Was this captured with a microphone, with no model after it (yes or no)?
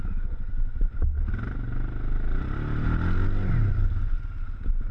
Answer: yes